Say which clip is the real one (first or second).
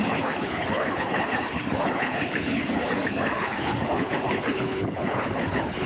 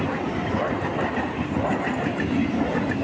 second